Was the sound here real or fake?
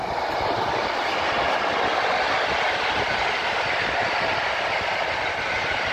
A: fake